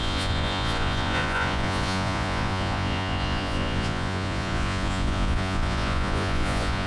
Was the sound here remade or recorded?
remade